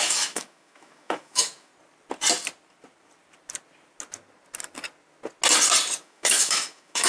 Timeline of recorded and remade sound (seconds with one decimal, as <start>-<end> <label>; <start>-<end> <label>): 0.0-1.7 remade; 1.7-6.0 recorded; 6.0-7.1 remade